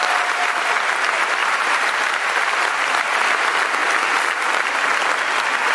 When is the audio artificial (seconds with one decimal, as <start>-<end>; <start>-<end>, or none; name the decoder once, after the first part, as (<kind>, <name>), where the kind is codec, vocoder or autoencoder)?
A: 1.4-2.4 (vocoder, BigVGAN v2)